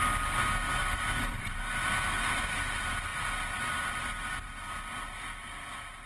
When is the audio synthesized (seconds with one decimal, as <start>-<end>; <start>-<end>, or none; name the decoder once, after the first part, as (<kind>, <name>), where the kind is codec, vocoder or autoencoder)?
0.8-1.6 (vocoder, BigVGAN v2)